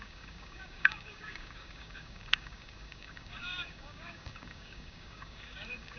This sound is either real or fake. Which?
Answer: fake